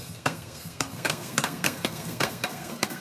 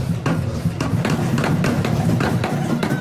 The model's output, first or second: first